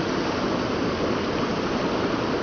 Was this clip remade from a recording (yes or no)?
no